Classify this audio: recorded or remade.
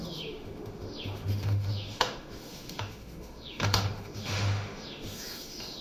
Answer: remade